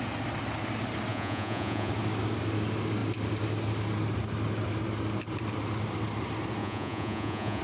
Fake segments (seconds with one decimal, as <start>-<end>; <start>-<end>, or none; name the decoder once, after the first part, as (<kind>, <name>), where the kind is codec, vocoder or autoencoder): 1.1-1.9 (vocoder, Vocos); 6.6-7.6